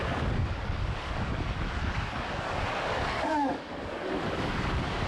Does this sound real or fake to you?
fake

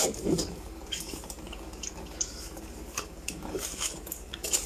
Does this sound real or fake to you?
fake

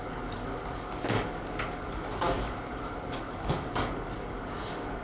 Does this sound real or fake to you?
fake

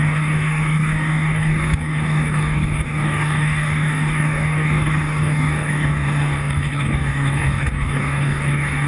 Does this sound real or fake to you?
fake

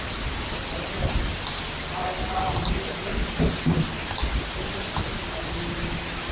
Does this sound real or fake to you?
real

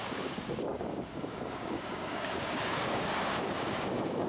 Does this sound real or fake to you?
fake